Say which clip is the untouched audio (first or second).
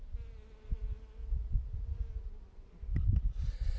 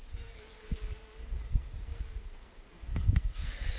first